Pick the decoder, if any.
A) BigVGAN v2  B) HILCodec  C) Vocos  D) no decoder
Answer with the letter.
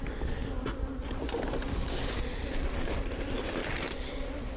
D